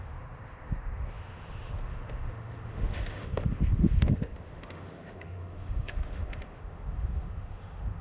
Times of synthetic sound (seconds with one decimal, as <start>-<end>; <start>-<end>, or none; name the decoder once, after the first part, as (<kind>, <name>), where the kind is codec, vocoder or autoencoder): 0.0-8.0 (autoencoder, DAC-VAE)

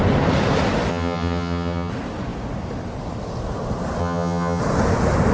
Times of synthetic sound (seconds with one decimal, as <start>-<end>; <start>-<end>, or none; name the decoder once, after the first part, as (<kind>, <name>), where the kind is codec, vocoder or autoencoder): 0.9-1.9 (vocoder, HiFi-GAN); 4.0-4.6

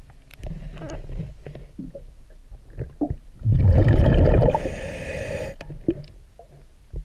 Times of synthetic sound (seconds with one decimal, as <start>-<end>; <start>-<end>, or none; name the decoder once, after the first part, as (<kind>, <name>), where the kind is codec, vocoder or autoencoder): 2.4-3.2 (vocoder, BigVGAN v2); 5.4-6.0

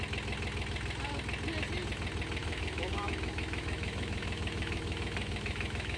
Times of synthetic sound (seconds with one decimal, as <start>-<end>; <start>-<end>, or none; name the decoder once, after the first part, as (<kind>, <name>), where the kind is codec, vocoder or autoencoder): 2.4-6.0 (autoencoder, DAC-VAE)

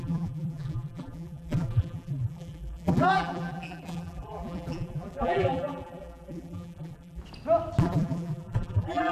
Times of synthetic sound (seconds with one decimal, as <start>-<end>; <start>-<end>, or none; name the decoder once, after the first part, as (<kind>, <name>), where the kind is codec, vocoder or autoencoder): 0.0-7.2 (vocoder, BigVGAN v2); 7.8-9.1

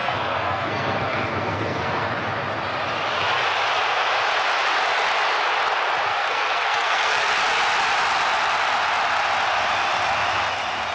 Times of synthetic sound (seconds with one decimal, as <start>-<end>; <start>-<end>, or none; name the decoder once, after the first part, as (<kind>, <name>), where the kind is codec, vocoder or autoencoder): 0.0-2.1 (codec, SNAC); 6.1-7.3

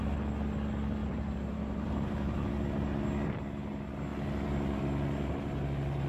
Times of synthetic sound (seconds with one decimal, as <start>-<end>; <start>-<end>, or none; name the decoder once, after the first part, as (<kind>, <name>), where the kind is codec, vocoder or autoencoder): 1.0-2.5 (vocoder, BigVGAN v2)